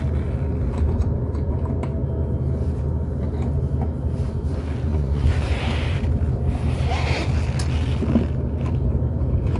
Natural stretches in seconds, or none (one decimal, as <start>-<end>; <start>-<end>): 0.0-4.9; 5.6-9.6